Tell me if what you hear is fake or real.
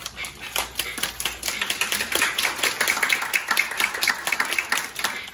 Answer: real